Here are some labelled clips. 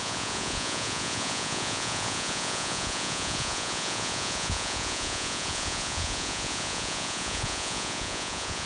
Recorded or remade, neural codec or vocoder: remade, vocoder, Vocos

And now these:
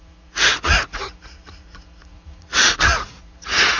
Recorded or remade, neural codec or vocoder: remade, vocoder, Vocos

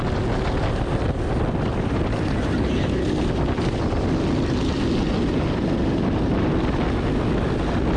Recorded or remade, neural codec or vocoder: recorded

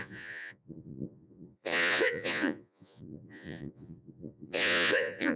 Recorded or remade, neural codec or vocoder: remade, vocoder, Vocos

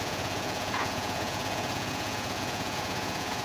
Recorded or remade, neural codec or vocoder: remade, vocoder, Vocos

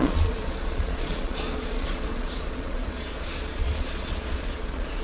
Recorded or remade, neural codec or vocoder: remade, vocoder, Vocos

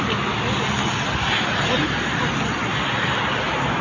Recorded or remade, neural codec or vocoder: recorded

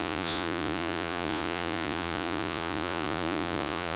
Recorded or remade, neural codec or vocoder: remade, vocoder, Vocos